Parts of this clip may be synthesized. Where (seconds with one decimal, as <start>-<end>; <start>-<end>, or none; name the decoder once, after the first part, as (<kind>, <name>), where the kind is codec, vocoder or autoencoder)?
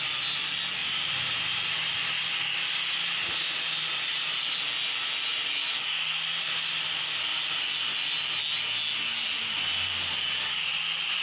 none